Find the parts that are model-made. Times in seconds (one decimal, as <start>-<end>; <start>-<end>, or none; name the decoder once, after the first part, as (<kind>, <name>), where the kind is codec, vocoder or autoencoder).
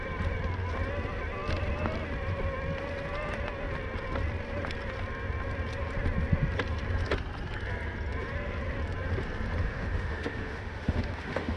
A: 9.6-11.6 (autoencoder, DAC-VAE)